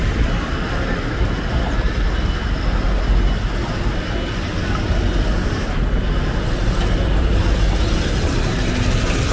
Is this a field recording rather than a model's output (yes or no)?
yes